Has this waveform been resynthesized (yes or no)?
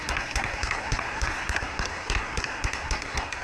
yes